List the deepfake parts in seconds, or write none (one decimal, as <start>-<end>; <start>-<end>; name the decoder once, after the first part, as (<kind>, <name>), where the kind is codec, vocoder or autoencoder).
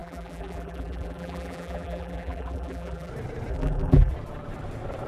0.0-3.1 (vocoder, BigVGAN v2); 3.5-4.1